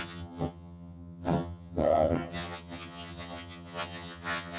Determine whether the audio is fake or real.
fake